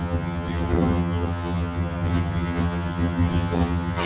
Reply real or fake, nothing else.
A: fake